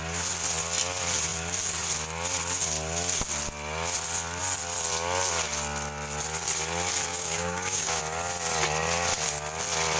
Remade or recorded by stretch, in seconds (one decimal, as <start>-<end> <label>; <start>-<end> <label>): 0.0-7.1 recorded; 7.1-8.0 remade; 8.0-10.0 recorded